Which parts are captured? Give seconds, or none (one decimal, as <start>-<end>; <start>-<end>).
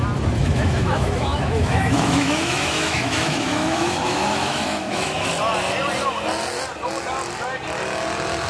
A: 0.0-0.4; 5.3-8.5